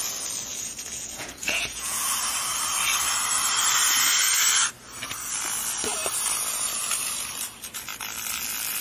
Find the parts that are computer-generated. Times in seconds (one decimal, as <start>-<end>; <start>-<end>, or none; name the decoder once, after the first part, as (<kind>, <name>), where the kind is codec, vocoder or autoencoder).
0.5-2.0 (vocoder, Vocos)